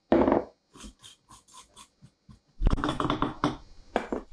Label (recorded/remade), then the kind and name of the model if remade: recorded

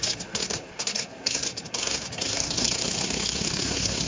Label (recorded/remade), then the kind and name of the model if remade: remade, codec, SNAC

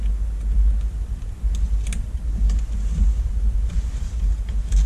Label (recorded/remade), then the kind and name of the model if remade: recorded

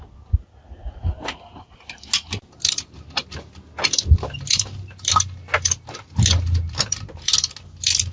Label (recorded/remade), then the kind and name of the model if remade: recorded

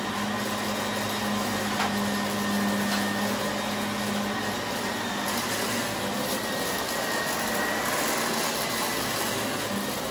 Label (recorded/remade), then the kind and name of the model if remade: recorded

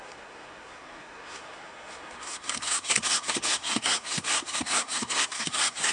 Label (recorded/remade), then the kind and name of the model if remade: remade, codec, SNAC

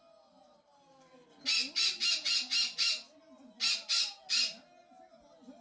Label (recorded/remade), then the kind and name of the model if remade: recorded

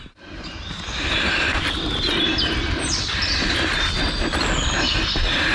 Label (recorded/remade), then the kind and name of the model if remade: recorded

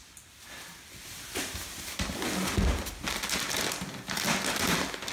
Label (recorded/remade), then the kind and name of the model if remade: recorded